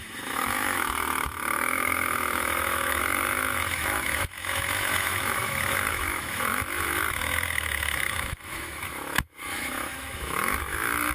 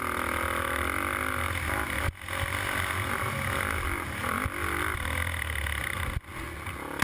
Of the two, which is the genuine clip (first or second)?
second